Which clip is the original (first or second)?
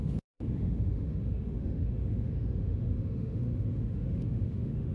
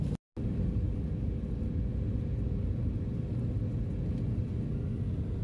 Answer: second